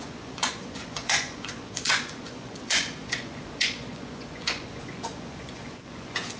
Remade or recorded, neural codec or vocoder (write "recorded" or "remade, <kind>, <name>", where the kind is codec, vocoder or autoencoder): remade, vocoder, Vocos